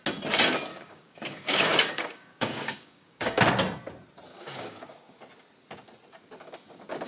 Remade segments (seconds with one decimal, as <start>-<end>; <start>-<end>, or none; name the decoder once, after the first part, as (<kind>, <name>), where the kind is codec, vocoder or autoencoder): 0.7-3.4 (codec, DAC); 4.3-5.2